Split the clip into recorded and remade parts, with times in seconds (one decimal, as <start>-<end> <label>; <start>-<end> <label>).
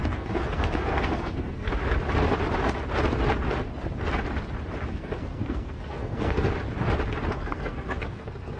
0.0-1.7 remade; 1.7-4.9 recorded; 4.9-6.5 remade; 6.5-7.3 recorded; 7.3-8.6 remade